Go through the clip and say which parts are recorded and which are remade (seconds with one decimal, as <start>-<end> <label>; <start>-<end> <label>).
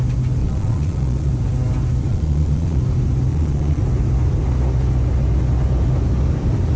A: 0.0-0.4 recorded; 0.4-1.3 remade; 1.3-2.1 recorded; 2.1-2.8 remade; 2.8-3.3 recorded; 3.3-3.8 remade; 3.8-6.8 recorded